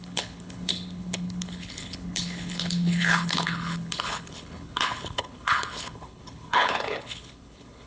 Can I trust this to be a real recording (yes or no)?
no